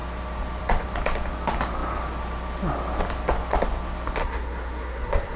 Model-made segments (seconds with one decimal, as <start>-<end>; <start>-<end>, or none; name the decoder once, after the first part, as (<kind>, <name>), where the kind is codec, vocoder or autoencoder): 4.2-5.4 (codec, SNAC)